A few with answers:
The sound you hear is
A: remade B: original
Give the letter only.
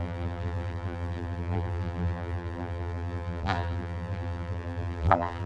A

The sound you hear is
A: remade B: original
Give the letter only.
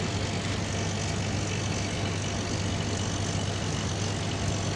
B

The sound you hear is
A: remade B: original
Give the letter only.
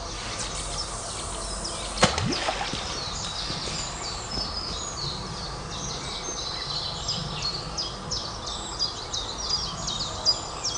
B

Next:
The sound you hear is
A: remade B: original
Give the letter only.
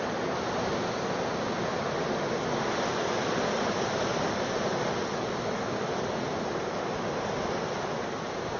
B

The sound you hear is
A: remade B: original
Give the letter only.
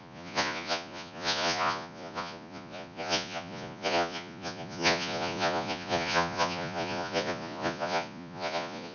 A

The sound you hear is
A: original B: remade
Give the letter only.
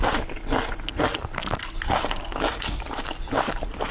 A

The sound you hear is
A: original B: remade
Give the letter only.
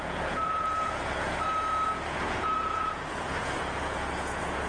B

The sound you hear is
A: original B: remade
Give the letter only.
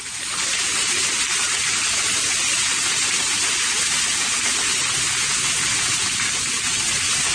A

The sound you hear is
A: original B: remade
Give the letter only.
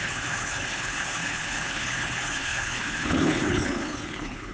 B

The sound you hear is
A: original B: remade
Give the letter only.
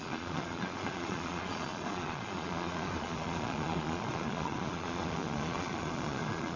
B